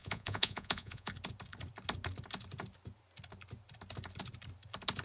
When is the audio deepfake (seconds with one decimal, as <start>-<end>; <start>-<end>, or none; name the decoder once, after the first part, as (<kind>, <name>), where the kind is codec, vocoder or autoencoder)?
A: 0.0-1.1 (vocoder, Vocos)